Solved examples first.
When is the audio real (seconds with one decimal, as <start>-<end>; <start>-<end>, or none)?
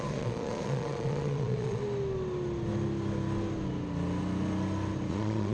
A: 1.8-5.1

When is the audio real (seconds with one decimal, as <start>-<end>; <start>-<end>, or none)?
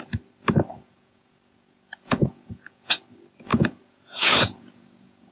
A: 0.0-0.7; 3.0-3.5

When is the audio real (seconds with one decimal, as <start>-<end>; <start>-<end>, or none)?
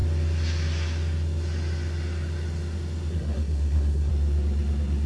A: 0.0-3.1; 4.1-5.1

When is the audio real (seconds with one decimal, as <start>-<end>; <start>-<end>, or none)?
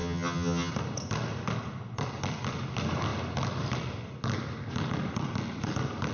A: 0.7-6.1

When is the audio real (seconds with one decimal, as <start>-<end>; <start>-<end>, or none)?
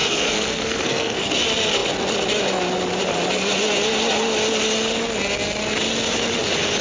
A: 1.3-6.8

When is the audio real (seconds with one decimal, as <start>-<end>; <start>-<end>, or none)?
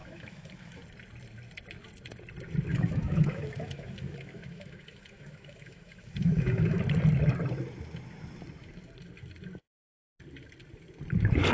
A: 0.8-2.7; 6.8-11.5